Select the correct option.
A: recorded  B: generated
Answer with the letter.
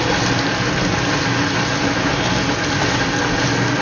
A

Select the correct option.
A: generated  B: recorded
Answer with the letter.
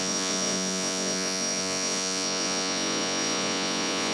A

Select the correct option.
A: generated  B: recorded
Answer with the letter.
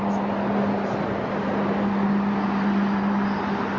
B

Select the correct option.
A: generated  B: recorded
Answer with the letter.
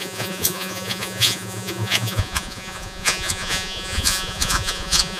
A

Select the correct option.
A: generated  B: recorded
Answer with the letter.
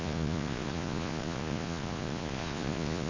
A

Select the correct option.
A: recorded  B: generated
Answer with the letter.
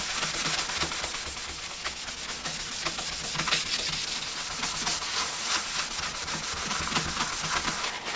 A